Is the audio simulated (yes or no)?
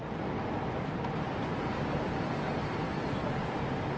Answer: no